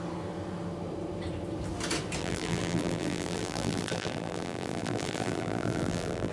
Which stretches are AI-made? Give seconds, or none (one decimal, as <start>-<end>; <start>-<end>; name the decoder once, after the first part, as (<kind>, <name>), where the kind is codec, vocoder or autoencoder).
2.2-6.3 (vocoder, BigVGAN v2)

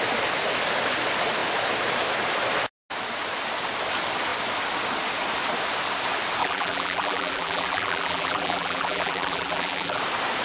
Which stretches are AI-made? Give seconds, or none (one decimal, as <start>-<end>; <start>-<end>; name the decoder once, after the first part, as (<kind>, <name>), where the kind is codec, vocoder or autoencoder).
6.4-10.0 (vocoder, BigVGAN v2)

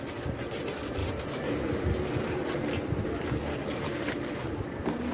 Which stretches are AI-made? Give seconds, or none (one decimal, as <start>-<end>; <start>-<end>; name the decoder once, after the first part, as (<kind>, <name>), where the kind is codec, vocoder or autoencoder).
1.0-1.9 (vocoder, BigVGAN v2); 3.6-4.6

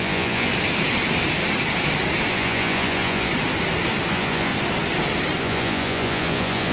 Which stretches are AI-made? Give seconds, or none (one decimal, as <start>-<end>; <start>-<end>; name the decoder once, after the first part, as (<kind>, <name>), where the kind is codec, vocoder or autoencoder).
0.0-0.5 (vocoder, Vocos); 2.3-3.3; 4.1-4.5; 5.4-6.7